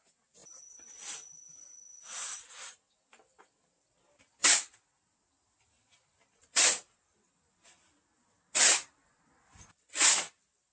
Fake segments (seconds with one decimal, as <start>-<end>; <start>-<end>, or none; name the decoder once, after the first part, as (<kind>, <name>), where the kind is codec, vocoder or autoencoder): none